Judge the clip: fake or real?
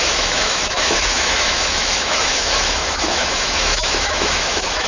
fake